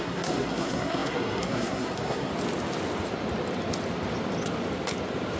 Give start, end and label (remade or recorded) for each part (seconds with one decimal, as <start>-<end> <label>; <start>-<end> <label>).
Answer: 0.0-2.3 remade; 2.3-5.4 recorded